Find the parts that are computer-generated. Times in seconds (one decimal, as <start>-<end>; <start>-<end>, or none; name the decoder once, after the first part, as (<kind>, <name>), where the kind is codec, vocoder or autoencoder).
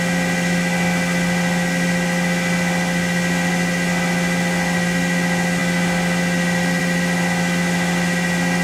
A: none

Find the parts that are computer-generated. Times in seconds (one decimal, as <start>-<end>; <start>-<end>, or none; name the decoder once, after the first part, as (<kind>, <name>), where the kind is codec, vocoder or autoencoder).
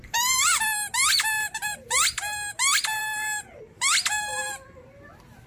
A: none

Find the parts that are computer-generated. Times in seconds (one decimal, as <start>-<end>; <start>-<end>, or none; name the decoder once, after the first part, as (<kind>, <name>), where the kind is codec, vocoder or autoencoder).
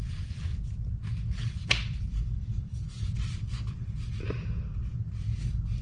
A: 0.0-0.5 (vocoder, BigVGAN v2); 1.1-5.8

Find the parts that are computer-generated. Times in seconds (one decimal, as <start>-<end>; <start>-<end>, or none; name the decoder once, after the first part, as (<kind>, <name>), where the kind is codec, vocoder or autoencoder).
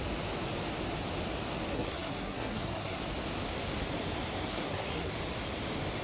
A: 1.7-3.0 (codec, SNAC); 4.5-5.1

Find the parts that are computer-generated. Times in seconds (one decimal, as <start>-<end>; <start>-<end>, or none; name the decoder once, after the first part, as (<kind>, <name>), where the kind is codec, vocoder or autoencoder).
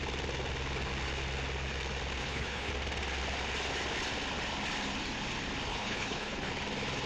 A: 2.2-2.7 (codec, HILCodec); 5.7-6.5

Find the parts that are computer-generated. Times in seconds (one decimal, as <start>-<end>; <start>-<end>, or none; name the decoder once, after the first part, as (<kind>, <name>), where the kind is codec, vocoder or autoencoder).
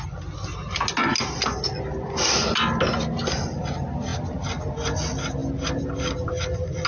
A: 4.1-4.6 (vocoder, BigVGAN v2)